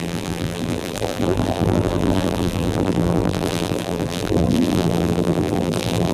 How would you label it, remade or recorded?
remade